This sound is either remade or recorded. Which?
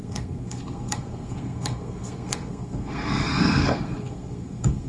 remade